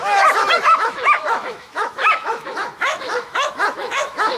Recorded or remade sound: remade